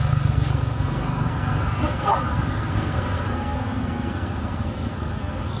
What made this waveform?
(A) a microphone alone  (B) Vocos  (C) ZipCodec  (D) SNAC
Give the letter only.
D